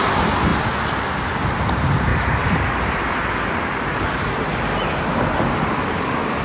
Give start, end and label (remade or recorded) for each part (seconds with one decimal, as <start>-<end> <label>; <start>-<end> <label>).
0.0-0.5 remade; 0.5-1.3 recorded; 1.3-2.1 remade; 2.1-5.9 recorded; 5.9-6.4 remade

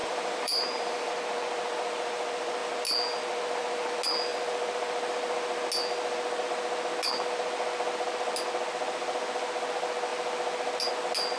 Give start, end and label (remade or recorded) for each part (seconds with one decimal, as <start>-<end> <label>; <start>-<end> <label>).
0.0-1.1 remade; 1.1-11.4 recorded

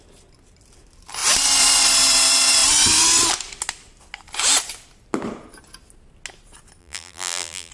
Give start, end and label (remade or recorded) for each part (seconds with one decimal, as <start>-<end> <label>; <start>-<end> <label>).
0.0-6.8 recorded; 6.8-7.7 remade

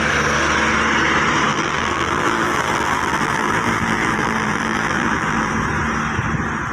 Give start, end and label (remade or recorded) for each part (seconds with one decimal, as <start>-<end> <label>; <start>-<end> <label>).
0.0-1.5 recorded; 1.5-5.5 remade; 5.5-6.7 recorded

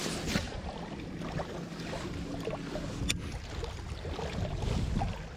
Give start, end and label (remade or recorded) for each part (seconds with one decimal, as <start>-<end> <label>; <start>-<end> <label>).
0.0-5.4 recorded

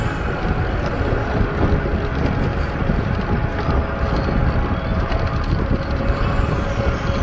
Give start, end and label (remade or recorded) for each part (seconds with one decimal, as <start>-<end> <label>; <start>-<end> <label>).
0.0-0.9 recorded; 0.9-1.5 remade; 1.5-2.5 recorded; 2.5-3.0 remade; 3.0-4.9 recorded; 4.9-6.7 remade; 6.7-7.2 recorded

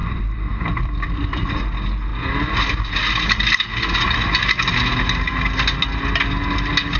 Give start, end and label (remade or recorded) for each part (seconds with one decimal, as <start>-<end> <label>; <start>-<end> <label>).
0.0-1.6 remade; 1.6-7.0 recorded

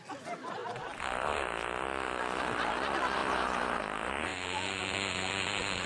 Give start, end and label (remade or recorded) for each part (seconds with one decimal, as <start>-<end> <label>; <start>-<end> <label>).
0.0-3.2 recorded; 3.2-3.8 remade; 3.8-4.3 recorded; 4.3-4.8 remade; 4.8-5.9 recorded